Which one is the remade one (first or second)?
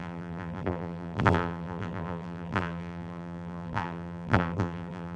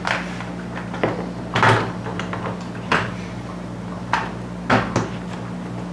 first